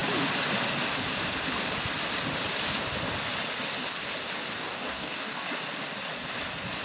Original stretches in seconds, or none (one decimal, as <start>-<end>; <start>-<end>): 0.0-4.6; 5.5-6.8